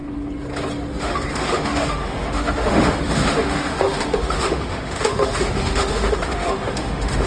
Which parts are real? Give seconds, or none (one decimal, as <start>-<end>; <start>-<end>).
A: 0.0-1.0